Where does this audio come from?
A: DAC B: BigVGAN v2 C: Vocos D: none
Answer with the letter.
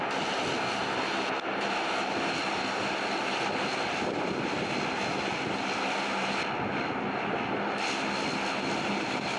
D